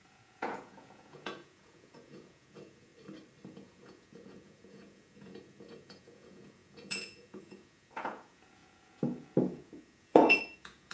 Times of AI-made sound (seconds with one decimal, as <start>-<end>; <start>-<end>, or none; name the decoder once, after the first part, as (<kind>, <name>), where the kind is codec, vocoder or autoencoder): 0.0-2.9 (vocoder, Vocos); 3.5-10.9

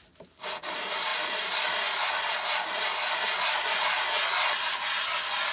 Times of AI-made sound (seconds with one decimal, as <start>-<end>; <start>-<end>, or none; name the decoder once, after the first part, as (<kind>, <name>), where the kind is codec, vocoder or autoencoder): none

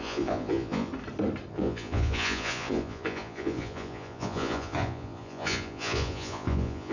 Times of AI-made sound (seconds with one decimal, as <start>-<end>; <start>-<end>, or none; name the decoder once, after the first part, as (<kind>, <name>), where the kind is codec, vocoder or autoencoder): 0.0-0.9 (vocoder, Vocos); 1.5-6.9

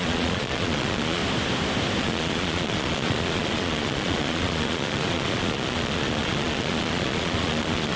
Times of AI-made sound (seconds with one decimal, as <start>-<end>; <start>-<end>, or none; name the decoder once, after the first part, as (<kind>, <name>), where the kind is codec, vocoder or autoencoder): 0.0-1.2 (vocoder, Vocos); 2.0-8.0

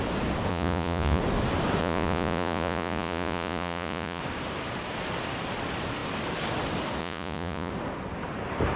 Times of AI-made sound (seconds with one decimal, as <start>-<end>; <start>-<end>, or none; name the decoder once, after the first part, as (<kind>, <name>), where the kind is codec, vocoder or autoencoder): 0.5-1.2 (vocoder, Vocos); 1.8-4.2; 7.0-7.7

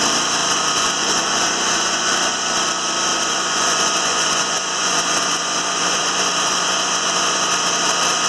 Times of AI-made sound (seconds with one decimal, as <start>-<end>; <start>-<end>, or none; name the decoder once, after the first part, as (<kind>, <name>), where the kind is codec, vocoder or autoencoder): 0.4-2.1 (vocoder, Vocos); 3.1-7.5

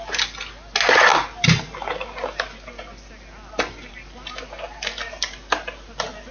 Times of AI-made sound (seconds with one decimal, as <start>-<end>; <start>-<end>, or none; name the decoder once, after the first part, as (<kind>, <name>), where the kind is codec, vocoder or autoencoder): none